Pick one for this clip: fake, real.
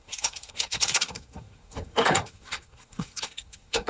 fake